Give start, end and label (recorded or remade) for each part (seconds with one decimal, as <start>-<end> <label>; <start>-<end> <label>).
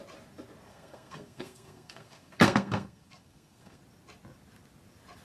0.0-0.7 recorded; 0.7-3.8 remade; 3.8-5.2 recorded